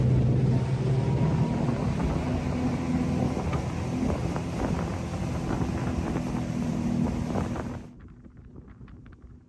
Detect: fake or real real